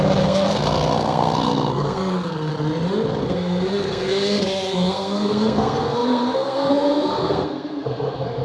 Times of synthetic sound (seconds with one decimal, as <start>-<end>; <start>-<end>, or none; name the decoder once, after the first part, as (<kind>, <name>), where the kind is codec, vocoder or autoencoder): 0.0-2.5 (codec, SNAC); 3.2-8.4